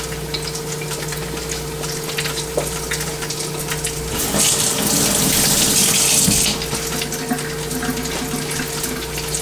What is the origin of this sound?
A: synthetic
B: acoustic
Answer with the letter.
B